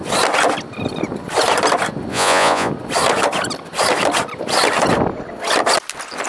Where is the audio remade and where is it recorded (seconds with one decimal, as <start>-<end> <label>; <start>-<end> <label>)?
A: 0.0-2.1 recorded; 2.1-2.7 remade; 2.7-6.3 recorded